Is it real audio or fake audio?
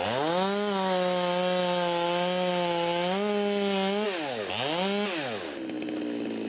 real